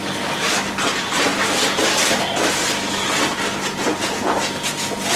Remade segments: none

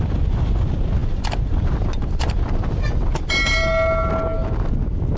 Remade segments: none

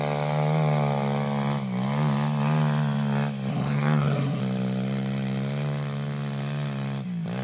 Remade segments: 3.5-4.4 (codec, SNAC)